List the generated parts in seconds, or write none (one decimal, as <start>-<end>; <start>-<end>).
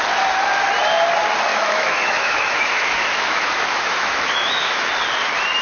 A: 1.5-4.9